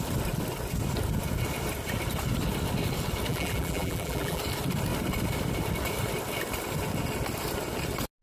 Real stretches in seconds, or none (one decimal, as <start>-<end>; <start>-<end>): 0.0-3.3; 4.4-8.2